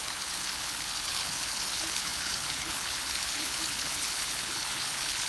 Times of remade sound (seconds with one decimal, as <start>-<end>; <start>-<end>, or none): 0.0-5.3